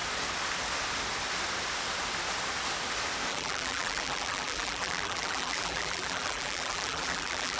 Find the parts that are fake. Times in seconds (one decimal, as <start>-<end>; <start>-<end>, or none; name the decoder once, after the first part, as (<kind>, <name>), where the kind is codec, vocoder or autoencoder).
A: 3.3-7.6 (vocoder, BigVGAN v2)